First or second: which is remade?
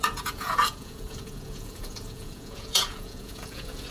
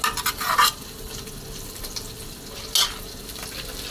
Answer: first